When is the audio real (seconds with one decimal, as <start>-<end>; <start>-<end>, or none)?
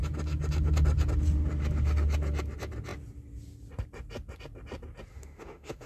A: 0.0-5.1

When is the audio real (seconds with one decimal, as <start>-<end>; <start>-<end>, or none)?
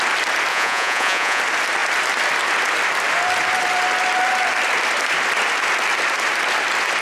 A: 0.0-0.5; 1.4-7.0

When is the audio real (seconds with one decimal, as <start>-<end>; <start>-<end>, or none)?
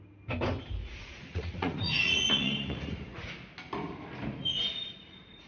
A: 0.0-0.8; 3.3-4.4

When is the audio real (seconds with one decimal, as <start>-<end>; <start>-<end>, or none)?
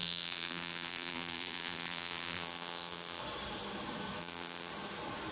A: 3.2-4.2; 4.7-5.3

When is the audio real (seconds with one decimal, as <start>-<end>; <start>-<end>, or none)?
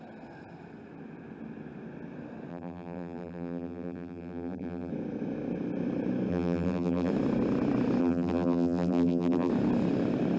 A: 0.0-2.5; 4.9-6.3; 7.1-8.0; 9.5-10.4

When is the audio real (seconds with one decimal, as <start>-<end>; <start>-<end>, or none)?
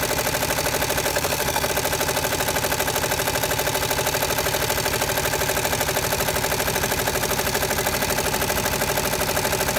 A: 0.0-1.1; 1.7-9.8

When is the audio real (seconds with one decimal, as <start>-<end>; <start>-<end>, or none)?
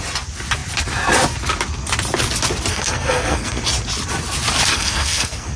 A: 0.0-2.7; 3.6-4.7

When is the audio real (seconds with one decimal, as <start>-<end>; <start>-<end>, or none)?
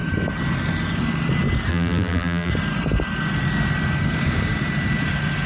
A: 0.0-1.7; 2.5-5.5